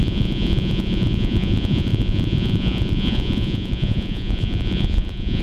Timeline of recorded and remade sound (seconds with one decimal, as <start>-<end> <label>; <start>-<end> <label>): 0.0-5.4 remade